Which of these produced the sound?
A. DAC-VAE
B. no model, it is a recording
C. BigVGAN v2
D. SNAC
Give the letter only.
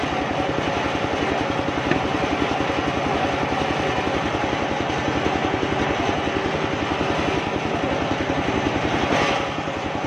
B